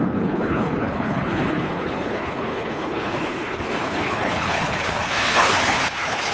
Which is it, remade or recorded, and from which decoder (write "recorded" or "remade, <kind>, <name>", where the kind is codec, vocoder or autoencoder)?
remade, codec, HILCodec